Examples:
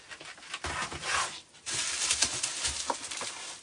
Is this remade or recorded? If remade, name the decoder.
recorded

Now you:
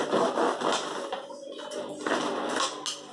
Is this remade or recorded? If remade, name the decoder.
recorded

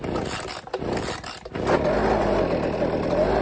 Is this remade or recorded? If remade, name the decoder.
recorded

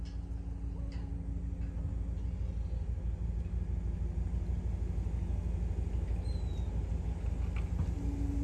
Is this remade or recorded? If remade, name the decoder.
recorded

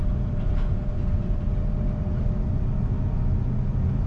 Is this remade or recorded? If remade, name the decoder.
recorded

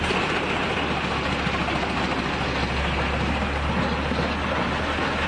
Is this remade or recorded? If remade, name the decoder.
recorded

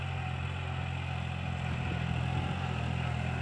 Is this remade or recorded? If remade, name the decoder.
recorded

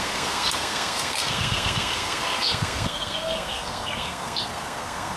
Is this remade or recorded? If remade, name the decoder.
remade, codec, SNAC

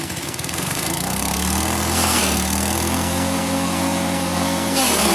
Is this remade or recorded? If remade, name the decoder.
remade, codec, SNAC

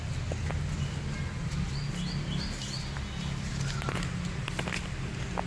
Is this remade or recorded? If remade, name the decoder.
recorded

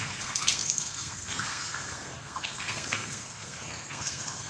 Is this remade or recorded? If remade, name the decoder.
remade, codec, SNAC